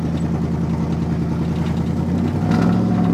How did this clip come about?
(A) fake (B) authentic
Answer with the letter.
B